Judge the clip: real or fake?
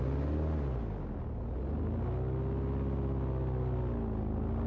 real